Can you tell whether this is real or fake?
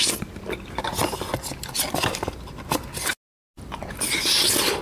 real